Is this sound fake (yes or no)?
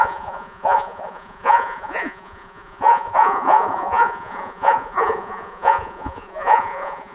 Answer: yes